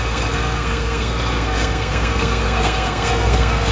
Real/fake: fake